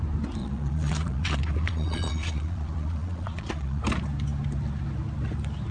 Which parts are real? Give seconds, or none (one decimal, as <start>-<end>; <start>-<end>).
0.0-0.4; 3.8-5.7